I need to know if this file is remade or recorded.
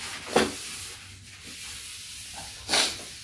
recorded